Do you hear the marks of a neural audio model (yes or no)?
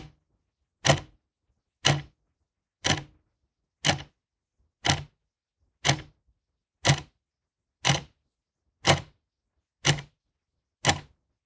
no